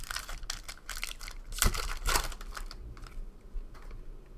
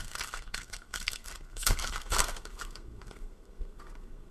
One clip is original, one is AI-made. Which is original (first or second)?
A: first